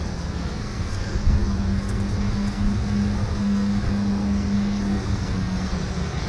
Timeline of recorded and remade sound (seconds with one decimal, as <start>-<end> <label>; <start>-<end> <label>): 0.0-6.3 remade